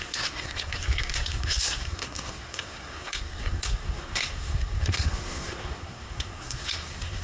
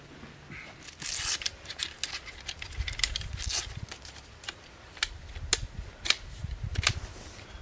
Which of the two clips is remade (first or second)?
first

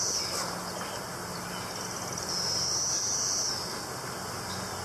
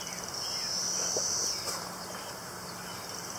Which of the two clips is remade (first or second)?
second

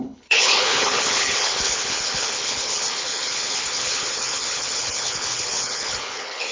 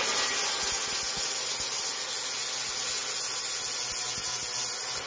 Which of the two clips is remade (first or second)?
first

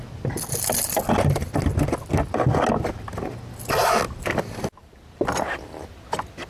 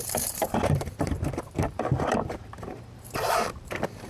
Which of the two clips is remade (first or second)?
second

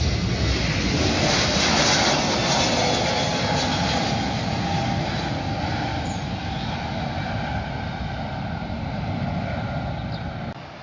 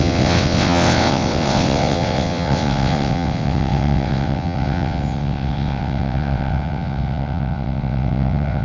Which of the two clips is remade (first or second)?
second